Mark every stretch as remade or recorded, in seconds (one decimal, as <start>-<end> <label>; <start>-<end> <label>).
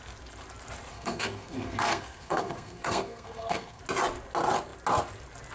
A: 0.0-0.9 recorded; 0.9-3.8 remade; 3.8-5.5 recorded